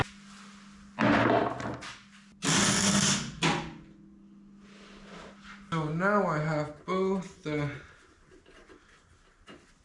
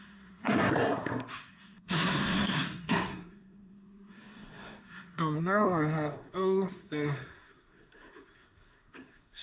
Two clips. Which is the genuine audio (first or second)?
first